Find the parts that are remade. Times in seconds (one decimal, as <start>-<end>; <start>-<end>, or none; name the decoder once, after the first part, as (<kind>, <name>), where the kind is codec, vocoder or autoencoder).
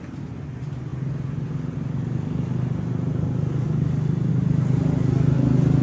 none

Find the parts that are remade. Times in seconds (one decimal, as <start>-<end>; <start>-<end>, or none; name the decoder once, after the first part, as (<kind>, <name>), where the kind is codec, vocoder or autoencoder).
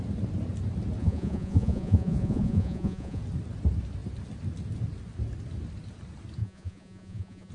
1.0-3.2 (vocoder, Vocos); 6.4-7.5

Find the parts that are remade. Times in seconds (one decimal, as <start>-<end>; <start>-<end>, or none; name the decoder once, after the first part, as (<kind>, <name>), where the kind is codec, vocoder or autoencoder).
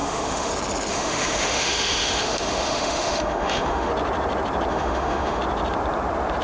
0.0-0.5 (autoencoder, DAC-VAE); 0.9-3.9; 4.7-5.4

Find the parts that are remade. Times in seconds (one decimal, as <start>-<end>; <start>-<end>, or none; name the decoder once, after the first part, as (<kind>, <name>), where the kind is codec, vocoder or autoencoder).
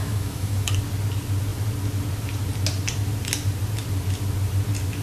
0.0-0.7 (autoencoder, DAC-VAE)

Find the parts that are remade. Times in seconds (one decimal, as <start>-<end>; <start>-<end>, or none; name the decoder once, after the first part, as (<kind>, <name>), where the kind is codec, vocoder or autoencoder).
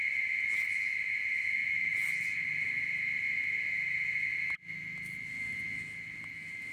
none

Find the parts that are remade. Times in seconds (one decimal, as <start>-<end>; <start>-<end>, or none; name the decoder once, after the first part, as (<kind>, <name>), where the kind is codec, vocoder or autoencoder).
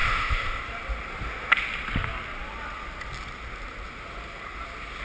0.0-0.6 (codec, ZipCodec)